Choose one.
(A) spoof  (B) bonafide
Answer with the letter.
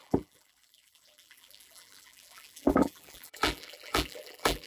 A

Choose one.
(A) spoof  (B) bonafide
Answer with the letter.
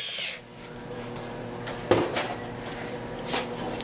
B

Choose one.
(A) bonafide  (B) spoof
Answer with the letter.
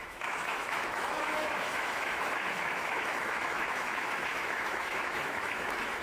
B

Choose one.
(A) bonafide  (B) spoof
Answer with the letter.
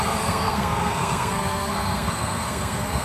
B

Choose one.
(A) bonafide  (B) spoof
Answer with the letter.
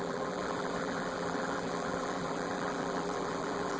B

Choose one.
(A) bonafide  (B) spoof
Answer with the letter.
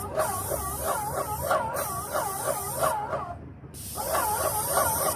A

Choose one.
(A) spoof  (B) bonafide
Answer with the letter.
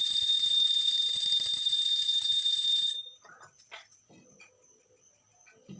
B